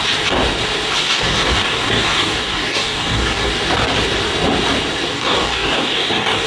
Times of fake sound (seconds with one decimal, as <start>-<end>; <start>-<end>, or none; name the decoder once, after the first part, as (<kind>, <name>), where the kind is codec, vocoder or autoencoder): 1.0-3.5 (codec, DAC); 5.1-6.5